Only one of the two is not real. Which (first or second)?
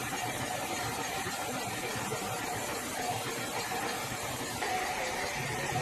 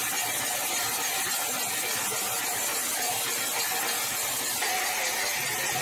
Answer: first